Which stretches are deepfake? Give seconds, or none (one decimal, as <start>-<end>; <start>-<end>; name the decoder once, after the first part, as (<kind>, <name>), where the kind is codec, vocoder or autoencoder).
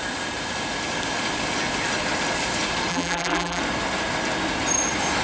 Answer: 2.9-3.6 (vocoder, BigVGAN v2)